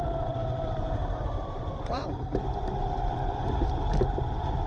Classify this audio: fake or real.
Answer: fake